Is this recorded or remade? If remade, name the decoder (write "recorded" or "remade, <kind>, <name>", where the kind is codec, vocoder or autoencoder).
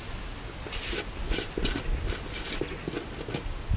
recorded